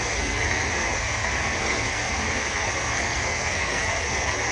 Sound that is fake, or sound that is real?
fake